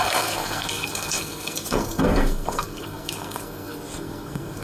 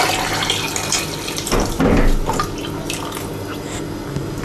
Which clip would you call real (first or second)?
second